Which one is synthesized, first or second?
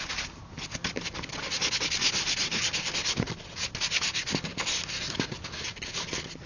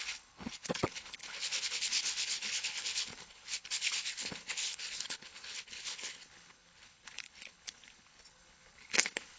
second